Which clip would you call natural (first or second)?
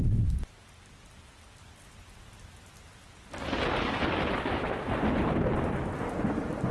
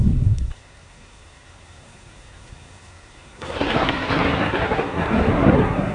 first